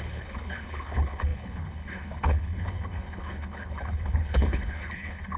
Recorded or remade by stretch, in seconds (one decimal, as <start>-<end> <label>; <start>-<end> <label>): 0.0-5.4 remade